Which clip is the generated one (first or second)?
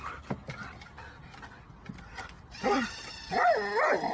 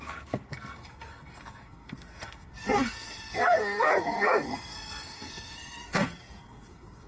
second